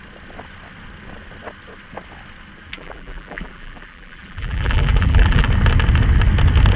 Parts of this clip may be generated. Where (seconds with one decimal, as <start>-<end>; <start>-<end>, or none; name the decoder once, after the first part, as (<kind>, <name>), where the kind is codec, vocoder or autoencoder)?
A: 2.7-5.5 (vocoder, BigVGAN v2)

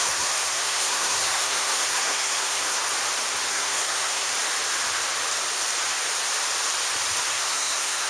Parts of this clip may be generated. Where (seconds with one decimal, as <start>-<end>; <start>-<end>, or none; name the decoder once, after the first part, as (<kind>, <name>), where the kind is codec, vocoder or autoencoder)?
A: 0.0-2.8 (codec, SNAC); 3.5-4.3; 7.3-8.1

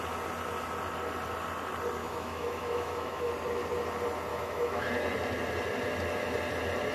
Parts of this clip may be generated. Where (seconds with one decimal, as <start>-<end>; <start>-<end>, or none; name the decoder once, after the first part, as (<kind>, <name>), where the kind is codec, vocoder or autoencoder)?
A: 2.0-3.3 (autoencoder, DAC-VAE); 4.3-4.9